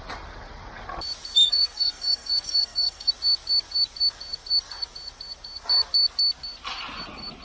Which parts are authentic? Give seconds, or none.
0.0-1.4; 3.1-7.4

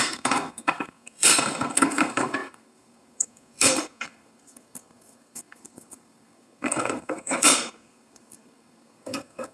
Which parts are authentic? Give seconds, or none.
none

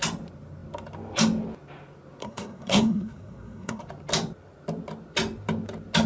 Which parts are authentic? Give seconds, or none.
0.0-2.2; 3.8-6.1

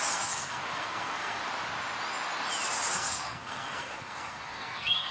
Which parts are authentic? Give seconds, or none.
1.4-2.9

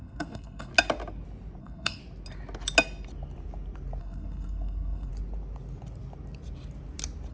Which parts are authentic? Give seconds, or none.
0.7-1.6; 2.0-4.0; 5.1-7.3